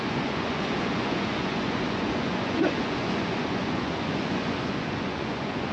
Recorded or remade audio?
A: remade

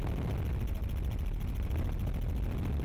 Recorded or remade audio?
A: recorded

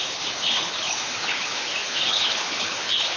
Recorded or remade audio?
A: remade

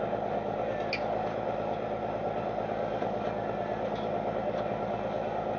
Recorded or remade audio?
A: recorded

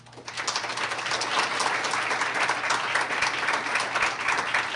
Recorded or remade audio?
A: recorded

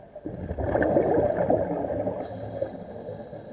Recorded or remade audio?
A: recorded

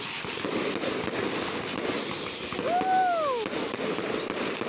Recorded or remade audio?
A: recorded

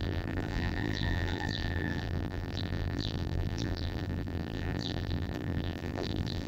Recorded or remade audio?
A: remade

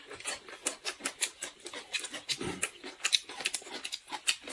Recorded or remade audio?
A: recorded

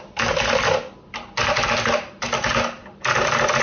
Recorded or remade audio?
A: recorded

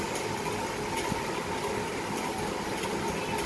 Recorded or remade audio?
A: recorded